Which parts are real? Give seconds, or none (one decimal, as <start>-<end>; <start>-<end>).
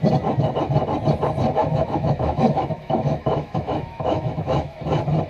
0.0-1.6; 4.8-5.3